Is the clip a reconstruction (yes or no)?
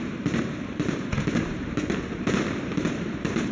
yes